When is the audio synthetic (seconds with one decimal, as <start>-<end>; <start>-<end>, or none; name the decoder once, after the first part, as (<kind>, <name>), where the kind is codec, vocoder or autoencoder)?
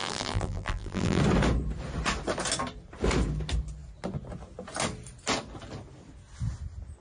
0.0-1.2 (vocoder, BigVGAN v2)